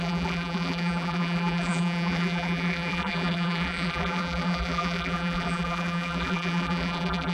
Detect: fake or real fake